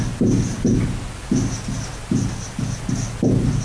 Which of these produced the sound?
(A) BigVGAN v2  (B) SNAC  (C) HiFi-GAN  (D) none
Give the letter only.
D